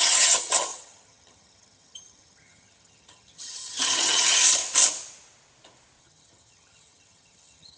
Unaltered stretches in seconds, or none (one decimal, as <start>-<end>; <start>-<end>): 4.6-6.0